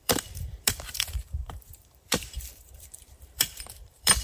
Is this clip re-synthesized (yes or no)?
yes